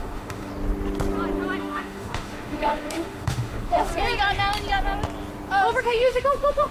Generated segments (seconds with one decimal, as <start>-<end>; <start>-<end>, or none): 0.0-0.5; 1.6-3.9; 5.8-6.7